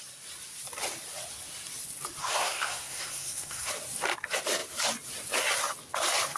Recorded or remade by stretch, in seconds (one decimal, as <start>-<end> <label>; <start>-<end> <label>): 0.0-2.2 recorded; 2.2-3.7 remade; 3.7-6.4 recorded